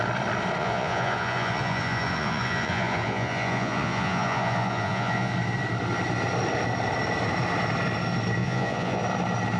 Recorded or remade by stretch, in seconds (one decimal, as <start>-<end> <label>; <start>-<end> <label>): 0.0-0.6 recorded; 0.6-5.3 remade; 5.3-8.4 recorded; 8.4-9.0 remade; 9.0-9.6 recorded